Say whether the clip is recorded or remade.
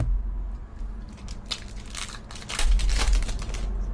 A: recorded